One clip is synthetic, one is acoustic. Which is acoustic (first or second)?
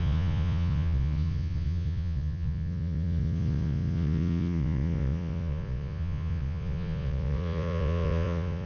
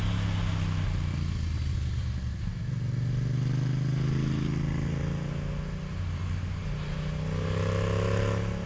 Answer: second